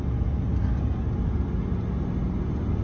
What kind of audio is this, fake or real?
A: real